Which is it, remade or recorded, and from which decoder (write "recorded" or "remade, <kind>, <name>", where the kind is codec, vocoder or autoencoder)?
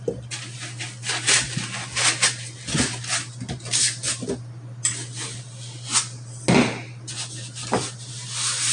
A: recorded